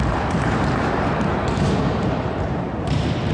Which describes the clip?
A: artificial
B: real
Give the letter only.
A